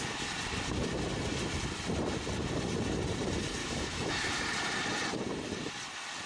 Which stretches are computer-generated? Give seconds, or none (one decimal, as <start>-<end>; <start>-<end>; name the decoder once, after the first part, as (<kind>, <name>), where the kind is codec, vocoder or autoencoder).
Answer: 3.6-4.3 (autoencoder, DAC-VAE)